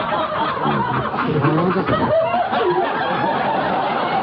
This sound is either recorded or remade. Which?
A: recorded